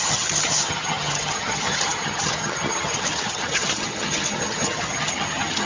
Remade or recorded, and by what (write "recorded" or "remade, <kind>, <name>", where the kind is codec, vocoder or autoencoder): remade, vocoder, HiFi-GAN